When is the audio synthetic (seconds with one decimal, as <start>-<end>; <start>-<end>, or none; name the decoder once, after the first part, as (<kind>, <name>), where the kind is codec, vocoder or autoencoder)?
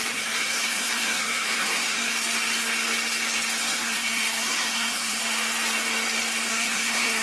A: 0.0-2.1 (codec, SNAC); 3.6-5.2; 6.5-7.2